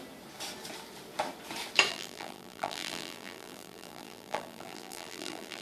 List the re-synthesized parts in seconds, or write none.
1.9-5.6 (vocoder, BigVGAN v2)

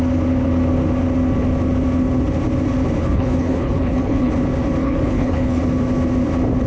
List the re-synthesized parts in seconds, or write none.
3.0-4.3 (codec, HILCodec); 4.8-5.6

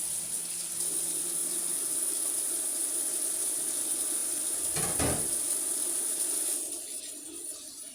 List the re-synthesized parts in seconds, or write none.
none

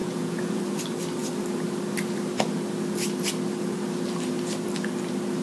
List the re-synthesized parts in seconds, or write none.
0.0-0.6 (vocoder, Vocos)

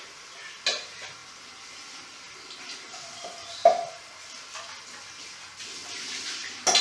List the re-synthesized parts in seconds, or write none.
none

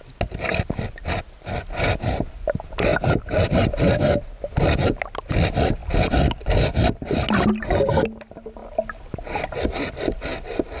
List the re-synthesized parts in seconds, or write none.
none

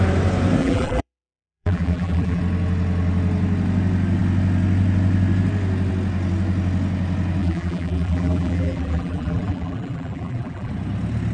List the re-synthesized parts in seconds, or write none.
0.6-2.4 (vocoder, BigVGAN v2); 7.4-10.7

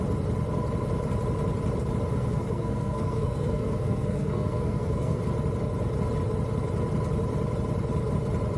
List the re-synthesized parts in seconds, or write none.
2.1-5.2 (codec, SNAC)